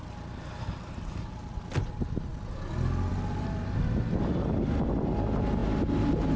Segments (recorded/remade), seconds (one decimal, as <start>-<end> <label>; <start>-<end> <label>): 0.0-6.4 recorded